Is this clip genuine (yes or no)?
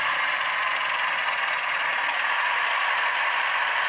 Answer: yes